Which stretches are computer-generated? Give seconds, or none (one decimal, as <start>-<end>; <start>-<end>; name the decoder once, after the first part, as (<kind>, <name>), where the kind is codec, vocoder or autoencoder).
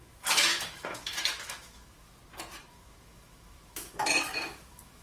0.0-2.2 (autoencoder, DAC-VAE); 2.7-5.0